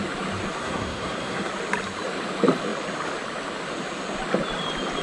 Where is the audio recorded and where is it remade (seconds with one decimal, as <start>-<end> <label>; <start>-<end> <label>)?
0.0-0.6 recorded; 0.6-1.5 remade; 1.5-5.0 recorded